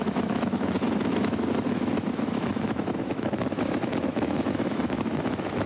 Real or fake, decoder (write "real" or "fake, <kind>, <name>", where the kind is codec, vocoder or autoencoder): fake, autoencoder, DAC-VAE